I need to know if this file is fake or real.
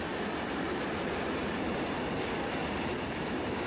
fake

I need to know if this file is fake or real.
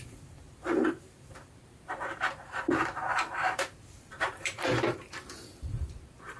fake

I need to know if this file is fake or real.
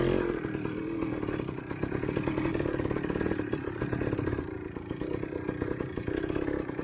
fake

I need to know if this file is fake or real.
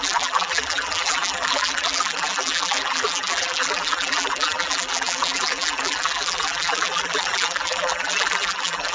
fake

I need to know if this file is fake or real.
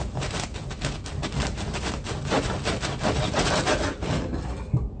real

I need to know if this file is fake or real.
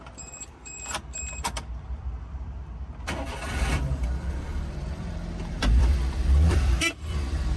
fake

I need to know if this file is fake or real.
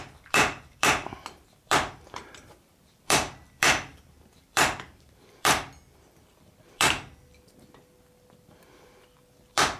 fake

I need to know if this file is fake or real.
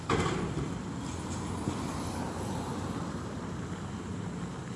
fake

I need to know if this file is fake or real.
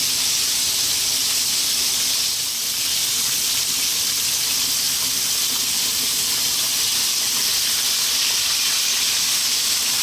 real